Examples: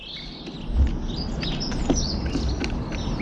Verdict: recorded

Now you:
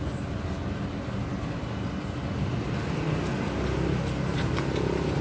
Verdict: recorded